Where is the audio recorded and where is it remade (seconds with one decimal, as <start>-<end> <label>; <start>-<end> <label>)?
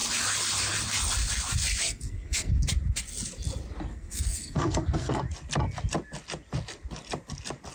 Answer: 0.0-1.8 recorded; 1.8-2.5 remade; 2.5-3.9 recorded; 3.9-5.2 remade; 5.2-7.7 recorded